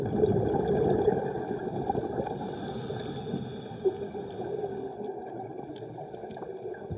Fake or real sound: real